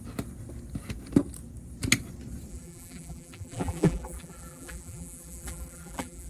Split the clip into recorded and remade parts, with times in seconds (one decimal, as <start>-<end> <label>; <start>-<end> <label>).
0.0-2.5 recorded; 2.5-6.3 remade